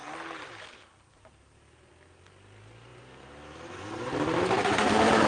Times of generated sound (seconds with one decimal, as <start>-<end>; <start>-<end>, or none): none